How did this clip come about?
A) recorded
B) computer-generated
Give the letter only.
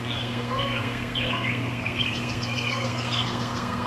B